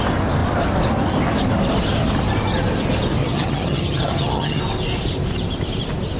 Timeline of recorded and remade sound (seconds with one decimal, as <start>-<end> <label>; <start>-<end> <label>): 0.0-3.2 recorded; 3.2-4.6 remade; 4.6-6.2 recorded